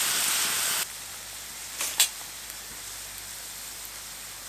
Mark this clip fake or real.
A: fake